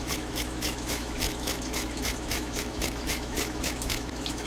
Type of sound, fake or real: fake